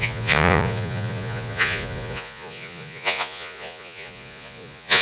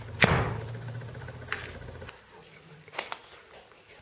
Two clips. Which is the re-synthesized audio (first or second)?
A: first